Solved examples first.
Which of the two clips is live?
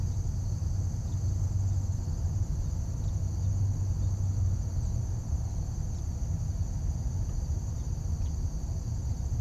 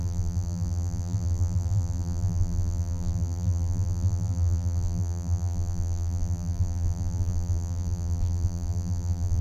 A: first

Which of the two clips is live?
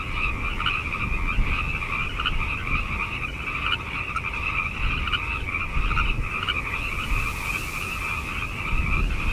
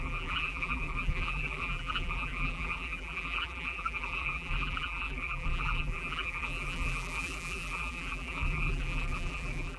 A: first